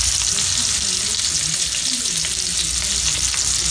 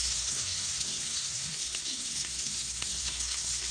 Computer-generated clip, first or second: second